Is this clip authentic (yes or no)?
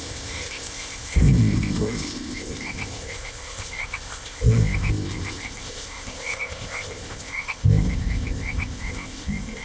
no